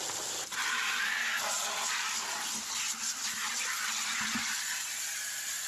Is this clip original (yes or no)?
yes